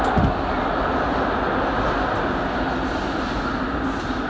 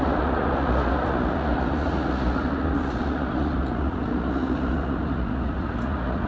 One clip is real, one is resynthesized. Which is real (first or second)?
first